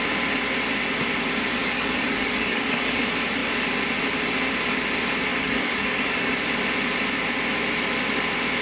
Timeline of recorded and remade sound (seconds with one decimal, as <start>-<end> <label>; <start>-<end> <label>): 0.0-1.6 recorded; 1.6-3.0 remade; 3.0-5.3 recorded; 5.3-6.3 remade; 6.3-8.6 recorded